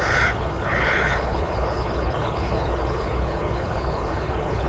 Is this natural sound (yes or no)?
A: no